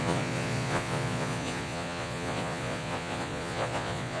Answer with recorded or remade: remade